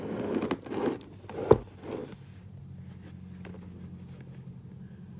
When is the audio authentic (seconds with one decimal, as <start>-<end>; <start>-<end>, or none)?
0.0-5.2